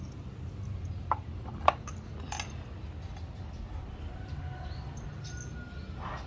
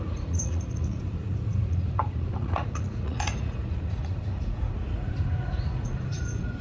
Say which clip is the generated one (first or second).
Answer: second